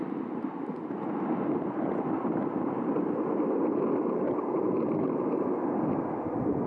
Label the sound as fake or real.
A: real